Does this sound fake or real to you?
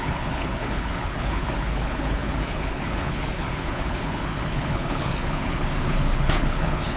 fake